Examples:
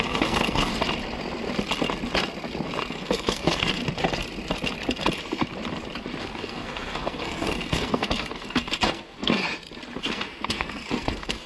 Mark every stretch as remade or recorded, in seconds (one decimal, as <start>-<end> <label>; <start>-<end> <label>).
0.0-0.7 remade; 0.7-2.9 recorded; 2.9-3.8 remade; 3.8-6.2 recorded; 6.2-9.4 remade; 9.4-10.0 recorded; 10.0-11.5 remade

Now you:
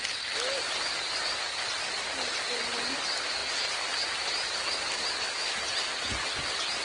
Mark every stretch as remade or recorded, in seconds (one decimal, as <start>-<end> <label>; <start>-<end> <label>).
0.0-6.8 recorded

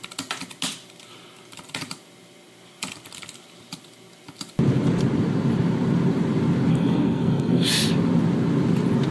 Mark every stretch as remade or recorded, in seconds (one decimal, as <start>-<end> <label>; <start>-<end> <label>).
0.0-6.7 recorded; 6.7-7.7 remade; 7.7-9.1 recorded

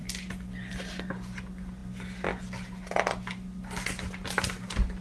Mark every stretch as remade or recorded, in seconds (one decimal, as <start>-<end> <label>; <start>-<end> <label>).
0.0-5.0 recorded